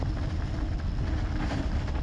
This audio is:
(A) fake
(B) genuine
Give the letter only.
B